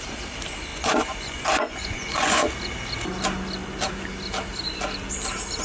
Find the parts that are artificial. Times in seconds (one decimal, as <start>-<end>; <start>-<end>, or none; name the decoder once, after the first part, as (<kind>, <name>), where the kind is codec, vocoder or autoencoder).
0.7-2.5 (vocoder, Vocos)